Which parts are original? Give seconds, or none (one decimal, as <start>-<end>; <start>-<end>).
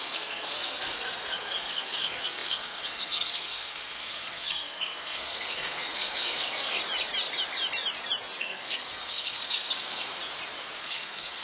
6.8-8.4; 10.2-10.8